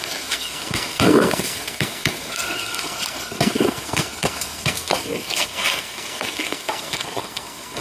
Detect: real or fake fake